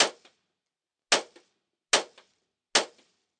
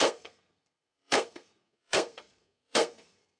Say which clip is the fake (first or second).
second